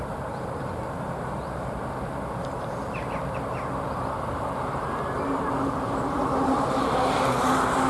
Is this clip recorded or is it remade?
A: remade